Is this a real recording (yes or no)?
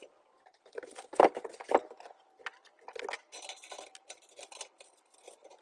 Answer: yes